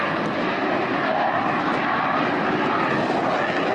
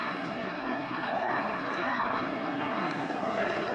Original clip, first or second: first